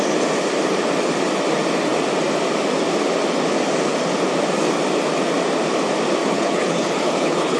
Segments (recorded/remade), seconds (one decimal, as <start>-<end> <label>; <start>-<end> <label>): 0.0-6.2 recorded; 6.2-7.6 remade